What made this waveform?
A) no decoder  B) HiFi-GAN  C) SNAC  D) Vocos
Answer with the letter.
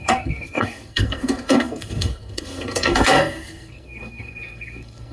C